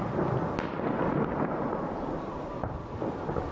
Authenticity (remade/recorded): recorded